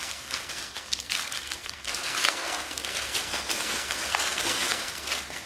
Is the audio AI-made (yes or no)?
yes